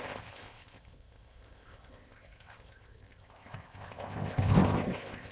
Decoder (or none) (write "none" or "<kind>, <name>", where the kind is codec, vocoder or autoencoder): codec, ZipCodec